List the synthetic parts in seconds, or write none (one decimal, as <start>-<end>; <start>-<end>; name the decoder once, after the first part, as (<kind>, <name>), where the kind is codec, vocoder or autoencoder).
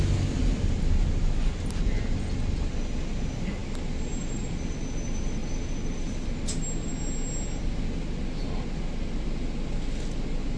none